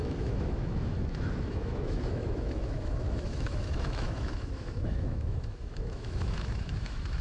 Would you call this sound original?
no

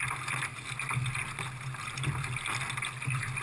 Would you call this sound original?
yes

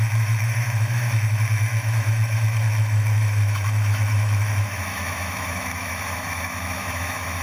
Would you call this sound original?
no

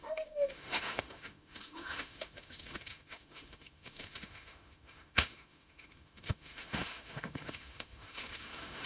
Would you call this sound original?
no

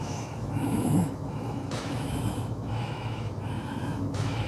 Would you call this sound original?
no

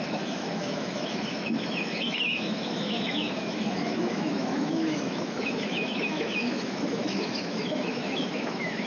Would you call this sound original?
no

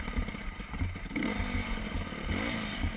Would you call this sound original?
yes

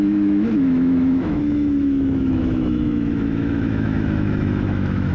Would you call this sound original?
no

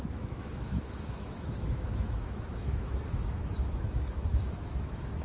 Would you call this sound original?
no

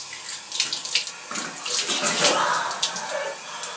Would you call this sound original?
yes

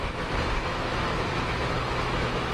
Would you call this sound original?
no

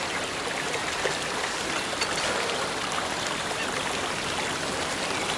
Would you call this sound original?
yes